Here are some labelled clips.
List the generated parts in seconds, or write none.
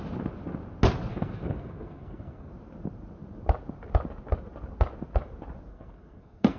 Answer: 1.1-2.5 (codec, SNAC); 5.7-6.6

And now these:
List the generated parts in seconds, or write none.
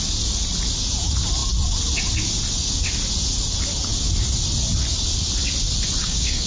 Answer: 6.0-6.5 (codec, DAC)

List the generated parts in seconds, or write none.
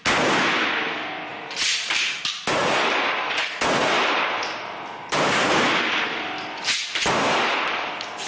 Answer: 1.3-2.2 (vocoder, BigVGAN v2); 2.6-5.5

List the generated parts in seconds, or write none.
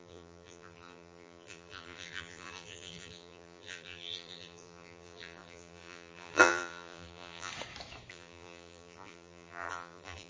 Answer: 0.0-7.5 (vocoder, BigVGAN v2); 8.1-10.3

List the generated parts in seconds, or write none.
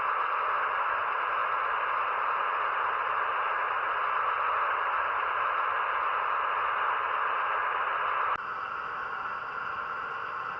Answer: 1.4-6.2 (vocoder, BigVGAN v2)